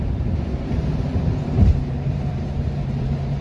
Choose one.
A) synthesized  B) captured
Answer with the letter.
A